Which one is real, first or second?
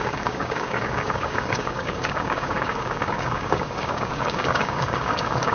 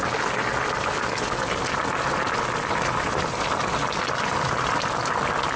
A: second